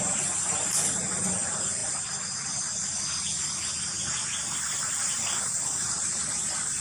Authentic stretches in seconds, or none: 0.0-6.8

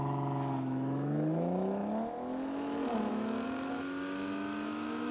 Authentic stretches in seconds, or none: none

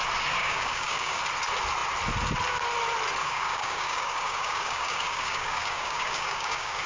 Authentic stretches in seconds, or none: 0.0-0.4; 1.2-3.2

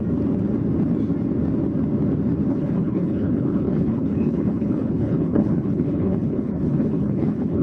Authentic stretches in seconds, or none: 0.0-2.5

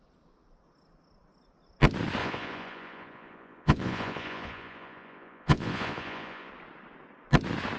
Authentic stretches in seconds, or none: 0.0-2.2; 6.5-7.8